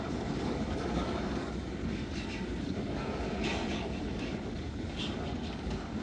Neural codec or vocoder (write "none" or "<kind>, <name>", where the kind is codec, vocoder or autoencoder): codec, DAC